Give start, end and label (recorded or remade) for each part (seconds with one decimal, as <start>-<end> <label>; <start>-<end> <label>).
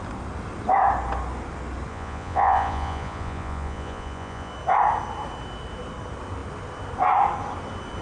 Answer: 0.0-1.9 recorded; 1.9-4.5 remade; 4.5-8.0 recorded